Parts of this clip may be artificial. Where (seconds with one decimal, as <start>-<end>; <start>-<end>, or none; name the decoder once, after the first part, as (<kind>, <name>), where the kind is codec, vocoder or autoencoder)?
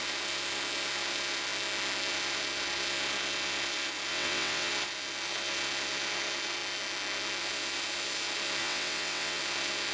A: 4.1-4.7 (vocoder, WaveNeXt); 8.6-9.4